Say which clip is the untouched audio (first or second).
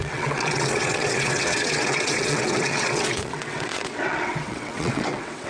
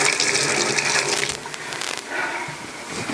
second